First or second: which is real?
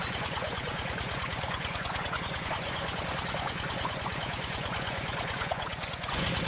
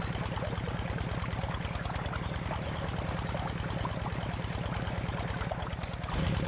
second